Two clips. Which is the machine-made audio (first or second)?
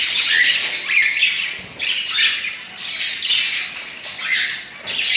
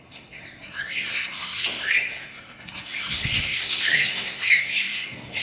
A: second